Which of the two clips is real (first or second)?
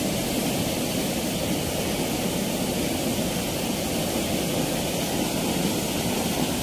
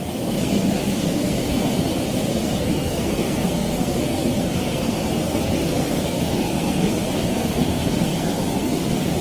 first